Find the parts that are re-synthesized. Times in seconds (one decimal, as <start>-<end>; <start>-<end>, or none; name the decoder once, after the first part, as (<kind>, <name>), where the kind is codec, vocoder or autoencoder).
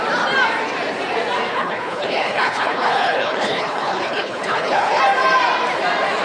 1.5-5.0 (codec, HILCodec)